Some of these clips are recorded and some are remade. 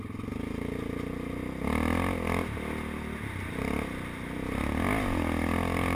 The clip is recorded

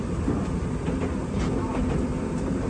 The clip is remade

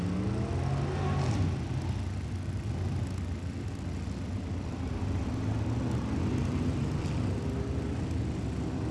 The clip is recorded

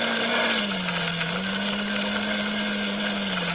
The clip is recorded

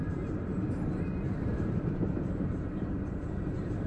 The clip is remade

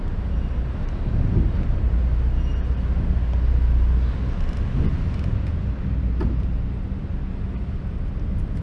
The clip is recorded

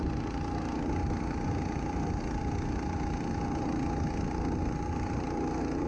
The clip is recorded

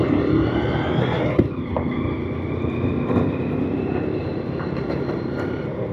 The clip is remade